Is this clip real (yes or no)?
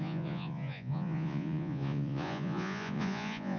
no